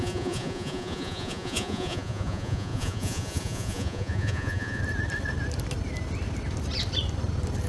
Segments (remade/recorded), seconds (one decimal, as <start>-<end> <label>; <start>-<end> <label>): 0.0-4.8 remade; 4.8-7.7 recorded